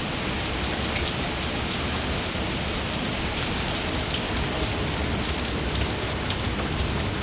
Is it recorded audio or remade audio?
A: recorded